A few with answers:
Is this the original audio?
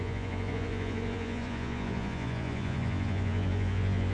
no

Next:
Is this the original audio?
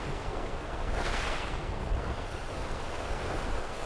no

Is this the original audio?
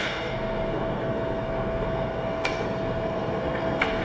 no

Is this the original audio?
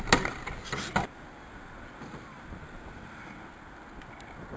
yes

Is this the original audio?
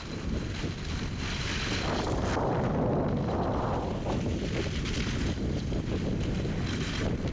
yes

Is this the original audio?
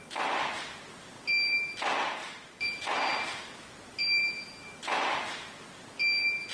yes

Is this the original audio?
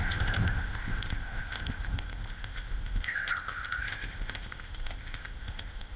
no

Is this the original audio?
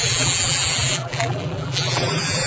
no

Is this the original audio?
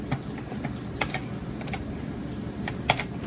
yes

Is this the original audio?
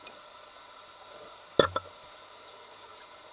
yes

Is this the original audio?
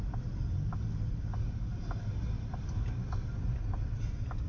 yes